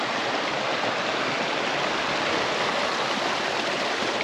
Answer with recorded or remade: recorded